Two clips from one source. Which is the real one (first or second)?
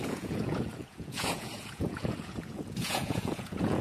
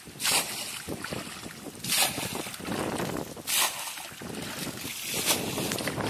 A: second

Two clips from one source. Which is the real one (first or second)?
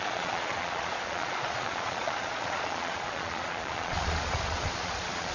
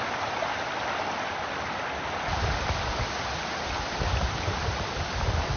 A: second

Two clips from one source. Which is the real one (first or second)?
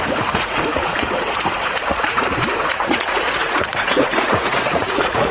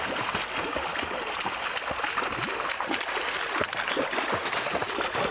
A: second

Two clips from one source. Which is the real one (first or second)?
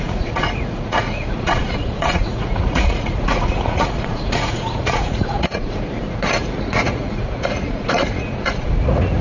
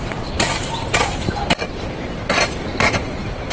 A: second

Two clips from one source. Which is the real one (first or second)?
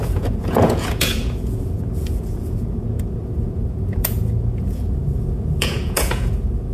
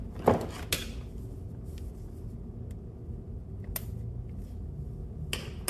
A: second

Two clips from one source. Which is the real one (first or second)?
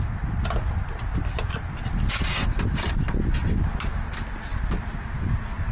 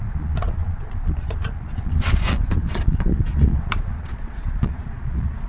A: first